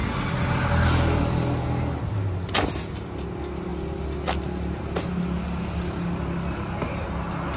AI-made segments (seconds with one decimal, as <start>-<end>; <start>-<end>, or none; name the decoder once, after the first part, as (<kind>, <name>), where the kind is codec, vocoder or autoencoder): none